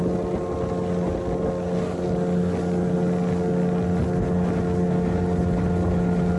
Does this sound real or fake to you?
real